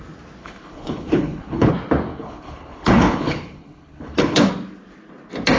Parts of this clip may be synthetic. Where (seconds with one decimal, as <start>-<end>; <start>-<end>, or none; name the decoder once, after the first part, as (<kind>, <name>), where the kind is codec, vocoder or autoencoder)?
0.4-1.7 (codec, HILCodec); 2.1-4.5